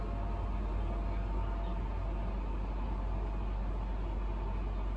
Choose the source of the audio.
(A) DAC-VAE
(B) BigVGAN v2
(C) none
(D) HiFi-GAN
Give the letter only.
C